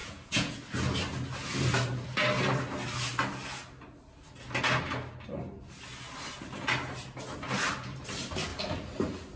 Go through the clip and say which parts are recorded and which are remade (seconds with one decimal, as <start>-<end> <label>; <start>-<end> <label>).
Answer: 0.0-0.6 remade; 0.6-9.4 recorded